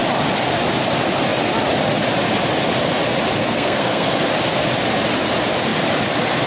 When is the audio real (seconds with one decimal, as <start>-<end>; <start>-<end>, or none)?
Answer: 0.0-3.4; 4.1-6.5